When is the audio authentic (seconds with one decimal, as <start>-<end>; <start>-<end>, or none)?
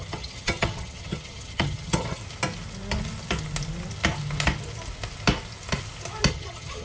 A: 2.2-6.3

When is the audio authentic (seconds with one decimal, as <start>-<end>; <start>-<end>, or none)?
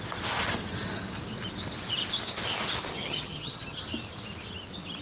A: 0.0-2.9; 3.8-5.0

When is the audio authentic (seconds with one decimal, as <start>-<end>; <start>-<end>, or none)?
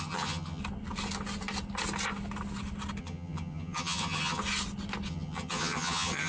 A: 0.6-3.0; 4.4-5.1